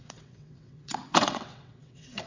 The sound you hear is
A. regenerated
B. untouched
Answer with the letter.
A